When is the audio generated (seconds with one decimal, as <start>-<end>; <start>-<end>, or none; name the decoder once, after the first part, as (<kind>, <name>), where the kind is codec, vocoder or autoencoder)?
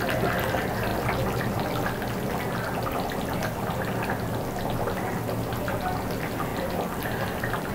6.5-7.7 (vocoder, BigVGAN v2)